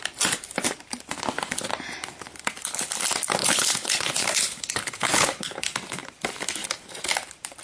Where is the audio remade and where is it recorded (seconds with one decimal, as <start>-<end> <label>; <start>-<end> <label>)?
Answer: 0.0-3.4 recorded; 3.4-5.6 remade; 5.6-7.6 recorded